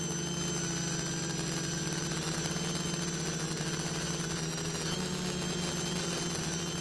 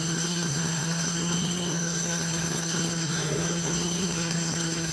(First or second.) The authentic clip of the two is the first